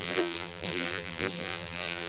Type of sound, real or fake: fake